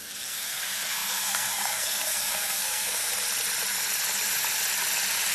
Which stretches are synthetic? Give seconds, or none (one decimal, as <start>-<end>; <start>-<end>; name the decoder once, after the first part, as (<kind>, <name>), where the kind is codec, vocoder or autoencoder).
0.0-3.1 (codec, SNAC)